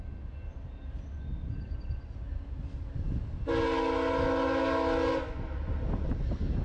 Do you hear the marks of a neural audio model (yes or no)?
no